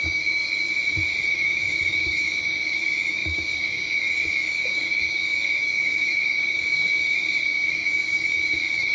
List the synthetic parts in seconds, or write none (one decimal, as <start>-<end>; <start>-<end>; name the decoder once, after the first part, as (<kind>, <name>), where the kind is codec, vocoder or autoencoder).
0.0-0.7 (codec, DAC); 1.3-8.9